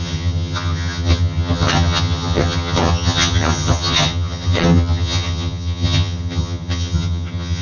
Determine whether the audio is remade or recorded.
remade